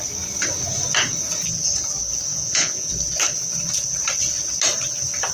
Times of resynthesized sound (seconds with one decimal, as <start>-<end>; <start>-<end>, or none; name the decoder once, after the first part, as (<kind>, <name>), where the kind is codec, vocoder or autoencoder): 2.3-2.9 (vocoder, Vocos)